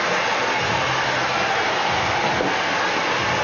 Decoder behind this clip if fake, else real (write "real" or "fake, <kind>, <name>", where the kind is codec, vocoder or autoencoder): real